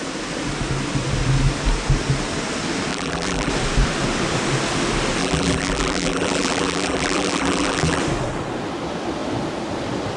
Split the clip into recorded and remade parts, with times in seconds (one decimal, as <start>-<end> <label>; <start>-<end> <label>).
0.0-2.9 recorded; 2.9-3.5 remade; 3.5-5.2 recorded; 5.2-8.0 remade; 8.0-10.2 recorded